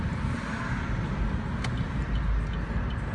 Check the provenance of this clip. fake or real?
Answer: real